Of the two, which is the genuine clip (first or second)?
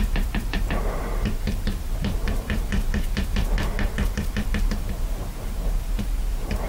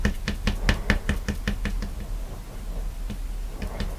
second